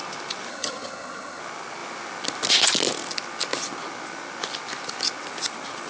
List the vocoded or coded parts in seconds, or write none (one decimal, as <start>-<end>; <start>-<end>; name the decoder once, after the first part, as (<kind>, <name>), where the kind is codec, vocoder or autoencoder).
0.5-1.4 (vocoder, HiFi-GAN)